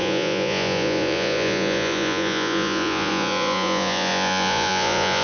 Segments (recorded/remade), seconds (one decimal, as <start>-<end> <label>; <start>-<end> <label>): 0.0-5.2 remade